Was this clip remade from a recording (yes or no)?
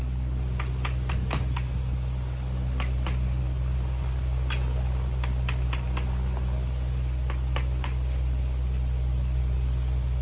no